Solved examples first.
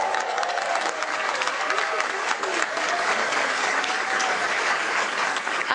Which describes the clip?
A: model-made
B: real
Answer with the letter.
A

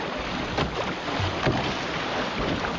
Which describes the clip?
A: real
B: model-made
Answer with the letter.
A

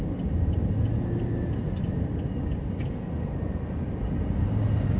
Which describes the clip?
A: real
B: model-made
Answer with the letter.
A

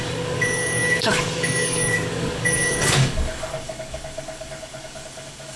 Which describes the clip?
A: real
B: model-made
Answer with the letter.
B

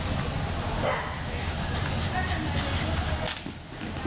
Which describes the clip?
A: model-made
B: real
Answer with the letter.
B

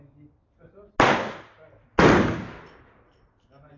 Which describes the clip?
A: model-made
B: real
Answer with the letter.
B